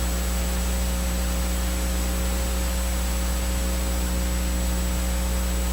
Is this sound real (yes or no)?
yes